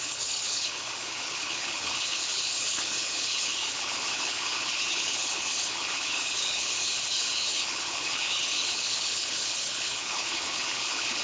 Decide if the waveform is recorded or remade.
remade